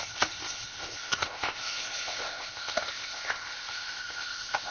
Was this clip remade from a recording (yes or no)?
yes